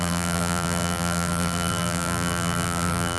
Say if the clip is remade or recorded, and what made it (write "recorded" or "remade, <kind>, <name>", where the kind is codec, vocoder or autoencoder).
remade, vocoder, BigVGAN v2